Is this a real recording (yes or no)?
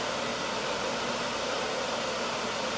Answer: no